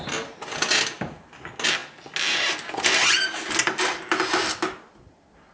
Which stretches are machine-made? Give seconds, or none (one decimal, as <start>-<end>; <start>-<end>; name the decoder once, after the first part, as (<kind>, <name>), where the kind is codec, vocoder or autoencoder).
none